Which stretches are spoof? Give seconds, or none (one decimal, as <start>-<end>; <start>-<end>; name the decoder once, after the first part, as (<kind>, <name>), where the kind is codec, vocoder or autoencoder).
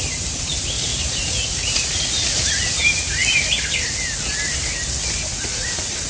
0.9-2.5 (vocoder, Vocos); 5.3-6.1